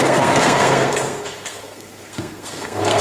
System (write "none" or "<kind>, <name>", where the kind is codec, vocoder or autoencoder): codec, SNAC